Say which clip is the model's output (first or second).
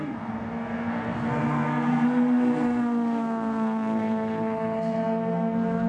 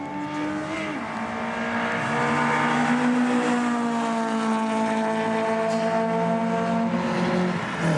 first